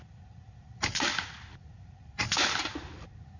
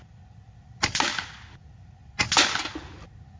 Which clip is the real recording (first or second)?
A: second